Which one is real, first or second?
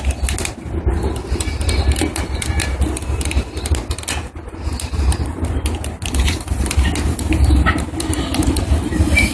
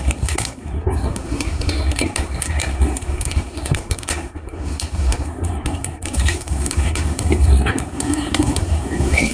first